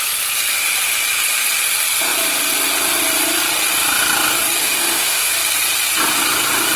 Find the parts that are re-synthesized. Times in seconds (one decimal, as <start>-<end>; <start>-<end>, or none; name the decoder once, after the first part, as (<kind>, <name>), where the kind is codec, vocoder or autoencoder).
4.6-5.3 (autoencoder, DAC-VAE)